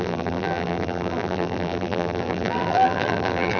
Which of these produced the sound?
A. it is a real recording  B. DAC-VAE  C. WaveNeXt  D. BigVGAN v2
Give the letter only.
D